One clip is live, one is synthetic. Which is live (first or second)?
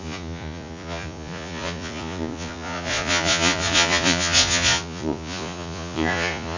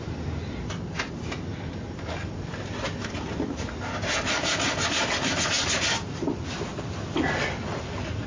second